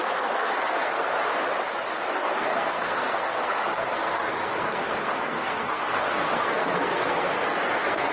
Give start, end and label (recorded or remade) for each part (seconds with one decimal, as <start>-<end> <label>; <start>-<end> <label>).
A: 0.0-1.3 remade; 1.3-2.1 recorded; 2.1-8.1 remade

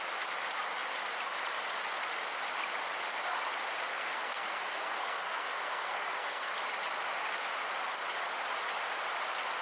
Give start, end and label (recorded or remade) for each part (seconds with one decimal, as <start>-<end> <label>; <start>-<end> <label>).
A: 0.0-3.9 recorded; 3.9-6.5 remade; 6.5-9.6 recorded

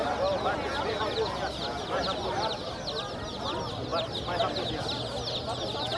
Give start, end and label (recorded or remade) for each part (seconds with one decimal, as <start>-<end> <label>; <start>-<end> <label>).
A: 0.0-6.0 recorded